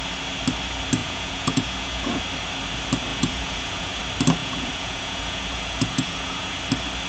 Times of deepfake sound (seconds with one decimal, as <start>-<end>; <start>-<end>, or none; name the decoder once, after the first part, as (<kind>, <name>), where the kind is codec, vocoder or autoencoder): 1.0-2.2 (vocoder, Vocos); 3.1-4.0; 4.4-6.6